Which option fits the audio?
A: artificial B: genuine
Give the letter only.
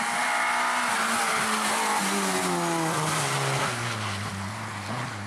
B